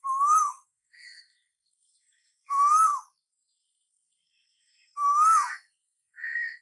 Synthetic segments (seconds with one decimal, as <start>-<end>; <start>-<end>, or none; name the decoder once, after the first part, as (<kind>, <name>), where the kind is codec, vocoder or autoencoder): 0.0-6.6 (codec, SNAC)